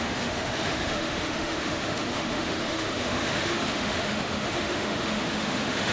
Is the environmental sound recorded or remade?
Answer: remade